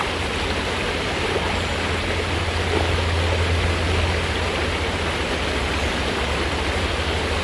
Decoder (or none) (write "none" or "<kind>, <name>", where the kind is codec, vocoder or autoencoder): none